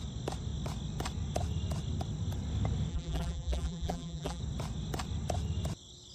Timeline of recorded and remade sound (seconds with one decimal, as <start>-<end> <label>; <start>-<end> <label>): 0.0-2.9 recorded; 2.9-4.4 remade; 4.4-6.1 recorded